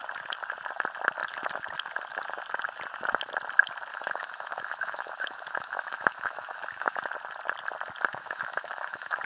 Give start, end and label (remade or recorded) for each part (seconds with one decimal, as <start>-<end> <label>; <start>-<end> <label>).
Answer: 0.0-3.9 recorded; 3.9-7.0 remade; 7.0-8.1 recorded; 8.1-9.2 remade